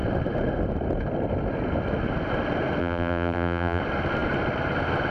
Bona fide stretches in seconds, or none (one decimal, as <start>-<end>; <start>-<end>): 0.0-2.8; 3.8-5.1